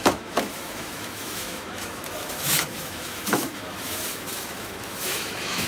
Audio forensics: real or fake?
fake